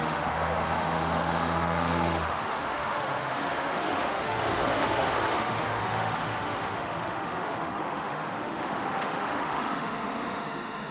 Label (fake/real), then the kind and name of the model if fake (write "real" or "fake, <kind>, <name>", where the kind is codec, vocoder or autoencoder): fake, autoencoder, DAC-VAE